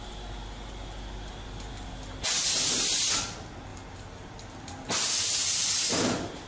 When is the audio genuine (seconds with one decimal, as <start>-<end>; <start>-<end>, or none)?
0.0-3.7; 4.3-6.5